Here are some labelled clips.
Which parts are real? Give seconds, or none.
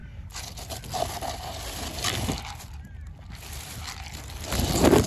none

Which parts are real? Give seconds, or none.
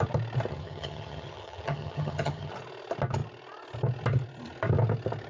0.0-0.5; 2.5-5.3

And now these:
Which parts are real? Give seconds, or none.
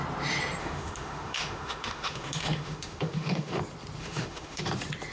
0.0-0.6; 3.6-4.0; 4.6-5.1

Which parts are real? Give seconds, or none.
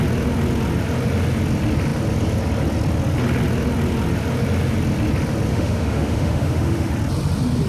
0.0-5.5; 6.9-7.7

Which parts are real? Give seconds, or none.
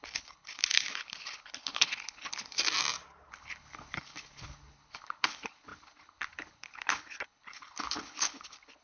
2.6-3.3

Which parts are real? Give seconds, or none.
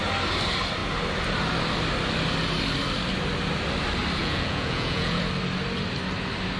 0.0-4.2; 5.2-6.6